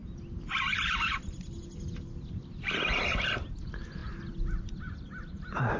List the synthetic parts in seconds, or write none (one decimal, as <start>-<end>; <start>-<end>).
none